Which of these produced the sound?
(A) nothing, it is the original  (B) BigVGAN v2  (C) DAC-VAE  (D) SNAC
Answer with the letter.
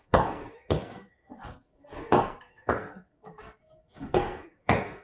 D